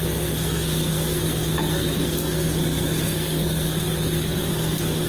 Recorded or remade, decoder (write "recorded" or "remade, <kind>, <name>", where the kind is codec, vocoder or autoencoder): remade, codec, SNAC